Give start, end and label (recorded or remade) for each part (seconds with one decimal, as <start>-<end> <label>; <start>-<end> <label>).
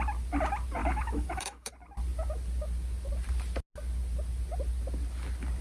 0.0-0.8 recorded; 0.8-1.7 remade; 1.7-5.6 recorded